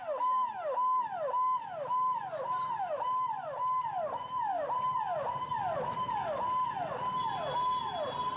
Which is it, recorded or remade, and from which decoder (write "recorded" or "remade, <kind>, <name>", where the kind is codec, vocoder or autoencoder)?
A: recorded